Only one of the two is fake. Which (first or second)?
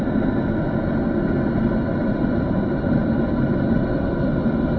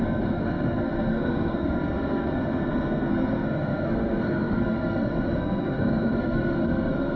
second